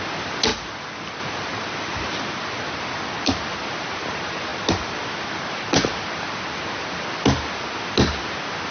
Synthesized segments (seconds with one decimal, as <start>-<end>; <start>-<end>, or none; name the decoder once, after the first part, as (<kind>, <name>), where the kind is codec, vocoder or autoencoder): none